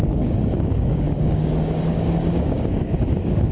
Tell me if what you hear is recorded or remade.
remade